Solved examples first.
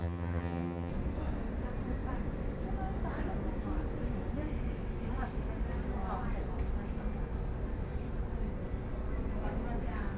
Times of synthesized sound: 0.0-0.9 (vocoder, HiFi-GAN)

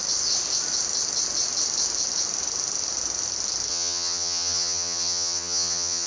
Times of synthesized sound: 3.7-6.1 (vocoder, HiFi-GAN)

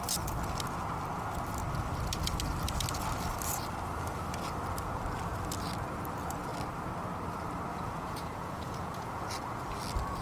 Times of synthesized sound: 7.7-9.3 (vocoder, Vocos)

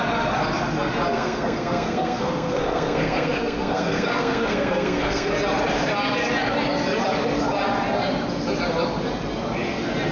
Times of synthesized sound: 1.1-5.3 (codec, SNAC)

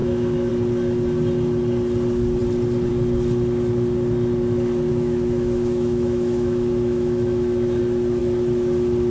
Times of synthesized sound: 0.0-0.5 (autoencoder, DAC-VAE); 4.9-7.8

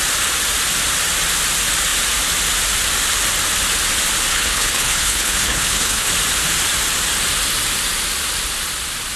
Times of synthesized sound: 4.3-6.1 (codec, HILCodec)

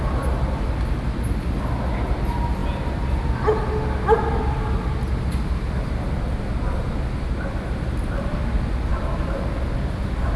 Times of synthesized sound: none

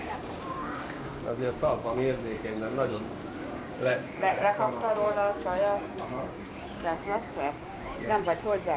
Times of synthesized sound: 0.0-8.8 (codec, DAC)